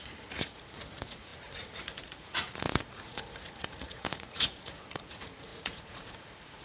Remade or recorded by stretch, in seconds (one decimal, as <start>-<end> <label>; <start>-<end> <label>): 0.0-6.6 remade